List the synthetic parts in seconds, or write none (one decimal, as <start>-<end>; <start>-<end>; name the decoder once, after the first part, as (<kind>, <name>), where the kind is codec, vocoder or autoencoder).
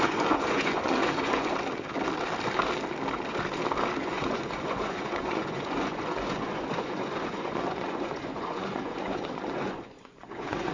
0.0-1.5 (vocoder, Vocos); 4.0-10.7